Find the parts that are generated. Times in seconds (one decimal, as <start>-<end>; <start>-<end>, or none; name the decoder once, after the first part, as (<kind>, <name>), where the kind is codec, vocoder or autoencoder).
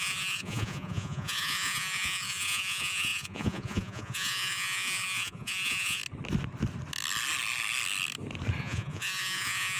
0.0-6.0 (vocoder, Vocos); 8.6-9.8